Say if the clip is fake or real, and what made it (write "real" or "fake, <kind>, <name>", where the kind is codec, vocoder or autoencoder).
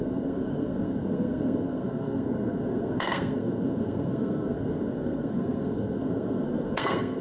fake, codec, SNAC